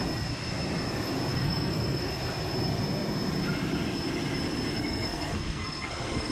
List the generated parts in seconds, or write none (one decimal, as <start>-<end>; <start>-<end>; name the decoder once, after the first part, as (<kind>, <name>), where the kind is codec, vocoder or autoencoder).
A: 1.3-2.1 (codec, SNAC); 4.7-6.3